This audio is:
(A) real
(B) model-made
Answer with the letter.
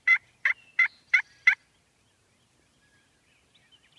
A